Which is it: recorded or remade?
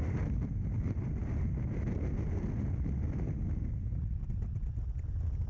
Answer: recorded